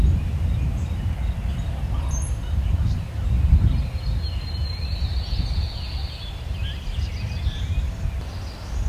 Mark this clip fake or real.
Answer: real